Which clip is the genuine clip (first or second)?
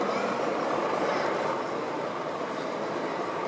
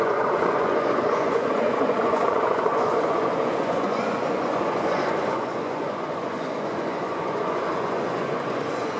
first